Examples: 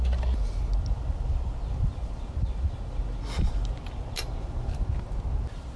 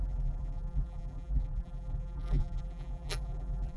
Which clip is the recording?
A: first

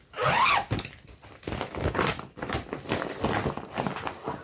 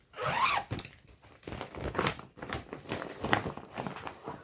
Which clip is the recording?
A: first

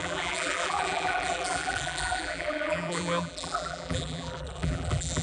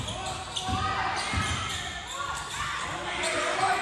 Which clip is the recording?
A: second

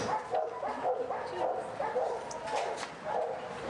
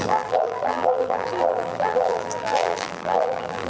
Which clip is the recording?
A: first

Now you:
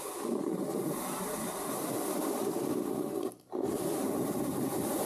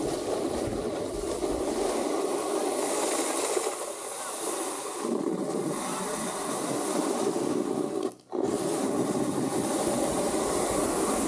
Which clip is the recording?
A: second